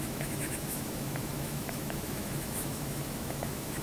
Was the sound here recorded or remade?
remade